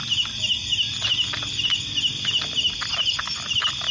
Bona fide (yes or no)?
yes